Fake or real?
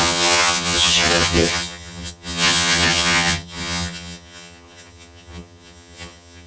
fake